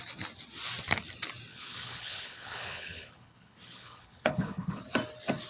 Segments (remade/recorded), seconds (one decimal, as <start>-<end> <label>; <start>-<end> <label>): 0.0-1.5 recorded; 1.5-4.8 remade; 4.8-5.5 recorded